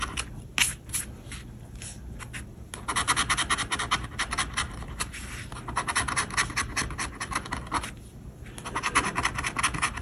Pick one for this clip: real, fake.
real